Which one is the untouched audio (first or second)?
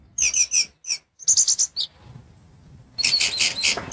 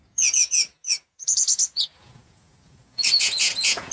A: first